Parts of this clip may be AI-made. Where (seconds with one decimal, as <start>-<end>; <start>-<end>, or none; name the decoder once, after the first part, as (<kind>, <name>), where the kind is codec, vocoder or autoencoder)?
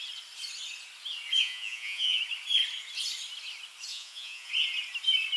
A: 1.4-2.2 (vocoder, Vocos); 3.9-4.5